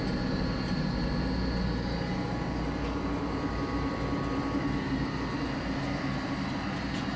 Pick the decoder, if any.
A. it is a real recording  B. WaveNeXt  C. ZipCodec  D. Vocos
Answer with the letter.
A